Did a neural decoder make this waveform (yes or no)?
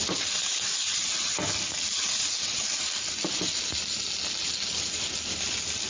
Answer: no